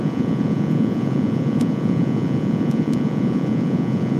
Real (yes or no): no